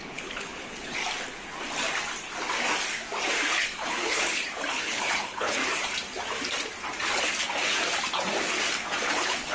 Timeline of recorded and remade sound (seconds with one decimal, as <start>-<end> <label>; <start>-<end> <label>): 0.0-1.0 remade; 1.0-3.5 recorded; 3.5-5.6 remade; 5.6-9.1 recorded; 9.1-9.5 remade

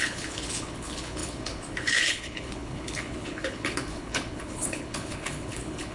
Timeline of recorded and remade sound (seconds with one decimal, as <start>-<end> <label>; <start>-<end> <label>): 0.0-5.9 remade

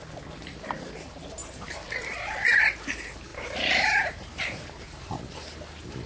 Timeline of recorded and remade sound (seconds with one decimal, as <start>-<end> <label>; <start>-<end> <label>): 0.0-1.4 recorded; 1.4-2.6 remade; 2.6-3.3 recorded; 3.3-5.0 remade; 5.0-6.1 recorded

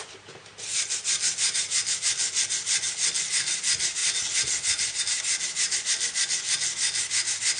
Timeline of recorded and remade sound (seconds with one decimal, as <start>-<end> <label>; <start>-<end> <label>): 0.0-7.6 recorded

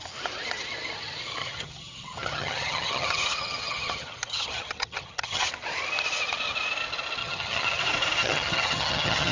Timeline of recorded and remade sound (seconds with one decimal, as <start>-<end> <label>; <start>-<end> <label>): 0.0-1.4 recorded; 1.4-5.5 remade; 5.5-7.2 recorded; 7.2-7.8 remade; 7.8-8.2 recorded; 8.2-9.3 remade

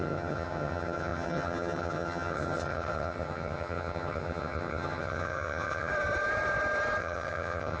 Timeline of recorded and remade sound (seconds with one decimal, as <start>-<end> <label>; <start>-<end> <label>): 0.0-5.9 remade; 5.9-7.0 recorded; 7.0-7.8 remade

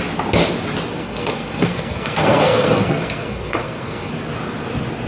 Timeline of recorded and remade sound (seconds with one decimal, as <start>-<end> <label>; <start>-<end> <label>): 0.0-1.0 recorded; 1.0-4.1 remade; 4.1-5.1 recorded

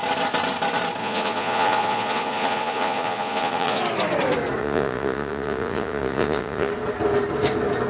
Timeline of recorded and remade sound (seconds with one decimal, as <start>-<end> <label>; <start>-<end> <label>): 0.0-1.0 recorded; 1.0-3.8 remade; 3.8-4.6 recorded; 4.6-6.7 remade; 6.7-7.9 recorded